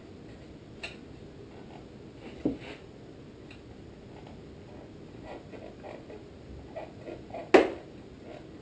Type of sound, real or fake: real